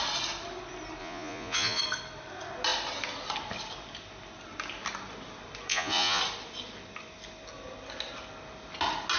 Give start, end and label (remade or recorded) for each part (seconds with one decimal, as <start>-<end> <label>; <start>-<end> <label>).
0.0-1.0 recorded; 1.0-1.8 remade; 1.8-5.7 recorded; 5.7-6.2 remade; 6.2-9.2 recorded